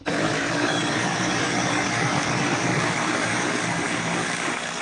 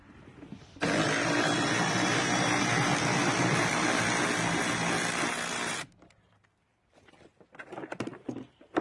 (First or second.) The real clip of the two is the second